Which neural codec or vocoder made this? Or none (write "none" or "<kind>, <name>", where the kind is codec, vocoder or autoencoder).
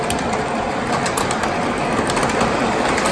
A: none